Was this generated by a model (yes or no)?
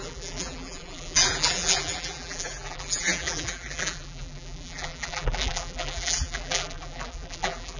yes